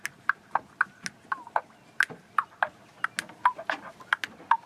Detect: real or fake real